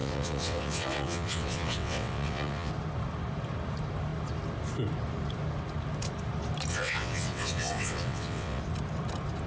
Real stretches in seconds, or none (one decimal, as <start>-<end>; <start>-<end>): 2.7-6.7; 8.6-9.5